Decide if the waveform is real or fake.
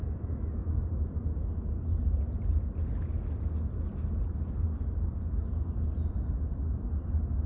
real